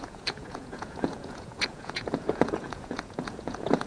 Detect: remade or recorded remade